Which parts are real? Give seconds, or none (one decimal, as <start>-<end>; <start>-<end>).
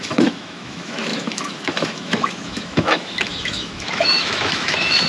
none